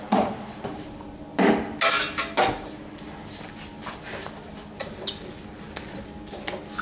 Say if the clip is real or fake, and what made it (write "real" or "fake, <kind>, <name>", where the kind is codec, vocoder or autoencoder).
real